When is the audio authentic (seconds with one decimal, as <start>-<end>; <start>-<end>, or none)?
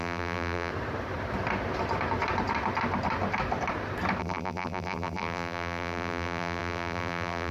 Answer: 0.7-4.2